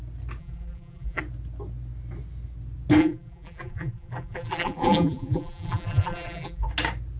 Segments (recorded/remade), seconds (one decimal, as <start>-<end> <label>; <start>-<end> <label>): 0.0-0.4 recorded; 0.4-1.2 remade; 1.2-3.0 recorded; 3.0-6.7 remade; 6.7-7.2 recorded